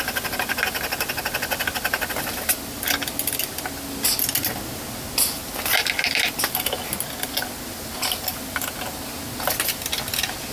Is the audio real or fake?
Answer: real